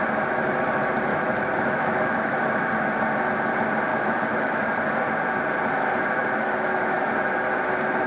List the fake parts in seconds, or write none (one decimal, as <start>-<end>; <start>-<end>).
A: 1.1-2.7; 3.9-4.7; 6.2-7.1